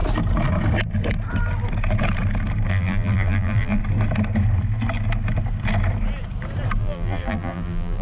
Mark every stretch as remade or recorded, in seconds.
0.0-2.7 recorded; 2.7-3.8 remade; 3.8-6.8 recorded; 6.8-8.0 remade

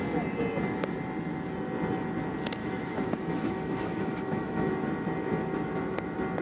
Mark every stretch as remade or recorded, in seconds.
0.0-2.6 recorded; 2.6-4.7 remade; 4.7-6.4 recorded

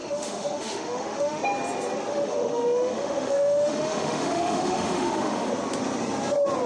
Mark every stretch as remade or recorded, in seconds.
0.0-1.4 remade; 1.4-2.1 recorded; 2.1-5.5 remade; 5.5-6.7 recorded

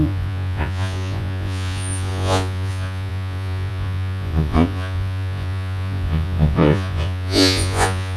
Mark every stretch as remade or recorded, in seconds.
0.0-8.2 remade